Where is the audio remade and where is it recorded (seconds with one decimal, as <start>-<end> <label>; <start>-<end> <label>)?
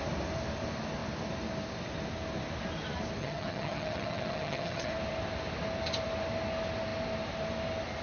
0.0-3.2 recorded; 3.2-4.9 remade; 4.9-8.0 recorded